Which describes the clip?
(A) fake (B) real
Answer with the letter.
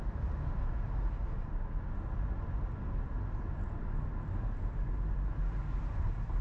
B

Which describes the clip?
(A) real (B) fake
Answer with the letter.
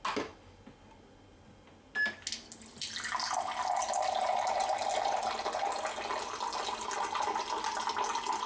A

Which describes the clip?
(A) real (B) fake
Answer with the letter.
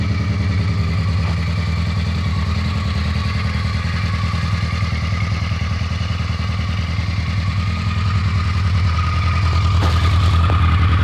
A